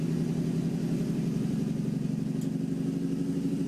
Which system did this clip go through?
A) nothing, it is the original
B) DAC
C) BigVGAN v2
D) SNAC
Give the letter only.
A